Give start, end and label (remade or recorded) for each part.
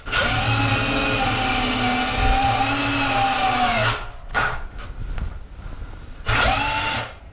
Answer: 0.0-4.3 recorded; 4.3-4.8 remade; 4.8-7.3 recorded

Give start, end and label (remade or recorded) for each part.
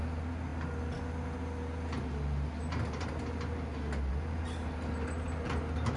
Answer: 0.0-6.0 recorded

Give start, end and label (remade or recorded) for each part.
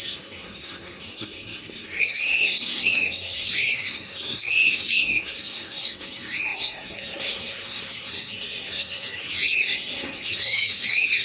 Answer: 0.0-11.2 remade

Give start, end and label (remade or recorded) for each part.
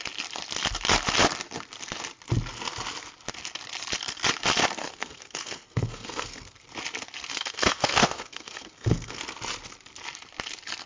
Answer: 0.0-4.8 recorded; 4.8-6.6 remade; 6.6-7.3 recorded; 7.3-9.2 remade; 9.2-10.9 recorded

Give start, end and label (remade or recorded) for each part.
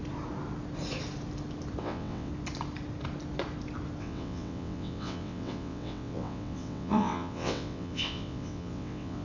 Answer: 0.0-1.8 recorded; 1.8-2.3 remade; 2.3-4.0 recorded; 4.0-9.2 remade